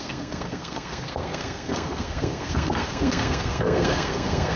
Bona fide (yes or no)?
no